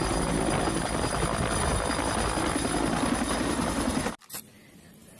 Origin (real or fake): real